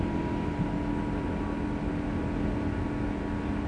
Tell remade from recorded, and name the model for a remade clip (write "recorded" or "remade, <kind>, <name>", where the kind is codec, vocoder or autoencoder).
recorded